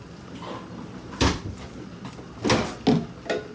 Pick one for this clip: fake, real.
real